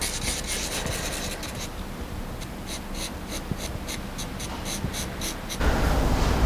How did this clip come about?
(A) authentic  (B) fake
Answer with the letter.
A